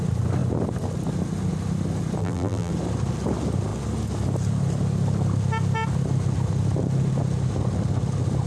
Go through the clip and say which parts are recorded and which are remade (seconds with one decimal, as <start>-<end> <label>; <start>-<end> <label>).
0.0-2.2 recorded; 2.2-2.7 remade; 2.7-8.5 recorded